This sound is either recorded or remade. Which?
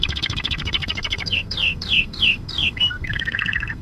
remade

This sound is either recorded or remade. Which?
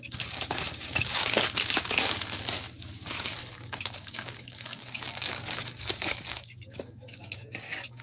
remade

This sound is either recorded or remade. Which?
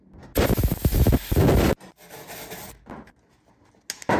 recorded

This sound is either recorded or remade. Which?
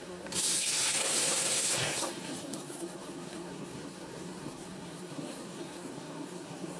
remade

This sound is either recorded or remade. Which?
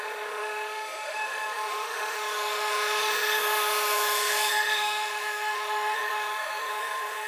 remade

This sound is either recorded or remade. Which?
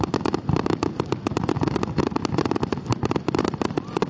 recorded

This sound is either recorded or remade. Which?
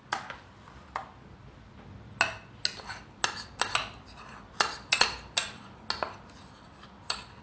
recorded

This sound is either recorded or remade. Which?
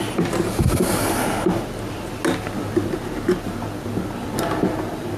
recorded